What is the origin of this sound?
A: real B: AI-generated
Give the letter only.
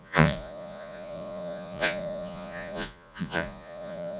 B